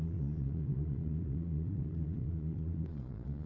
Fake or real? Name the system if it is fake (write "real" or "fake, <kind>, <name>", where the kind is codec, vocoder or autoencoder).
fake, vocoder, Vocos